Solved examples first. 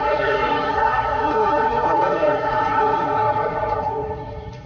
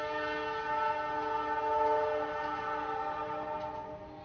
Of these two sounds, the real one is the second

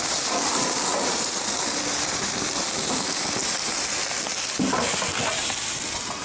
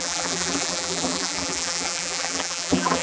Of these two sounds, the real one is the first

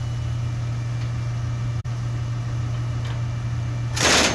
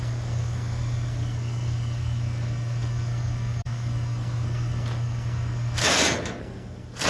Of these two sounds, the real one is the first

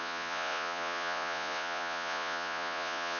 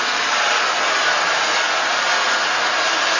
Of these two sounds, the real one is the second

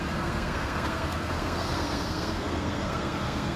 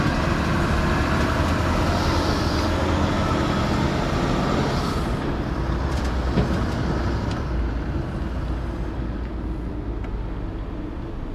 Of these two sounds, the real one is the second